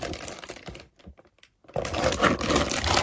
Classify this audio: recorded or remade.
recorded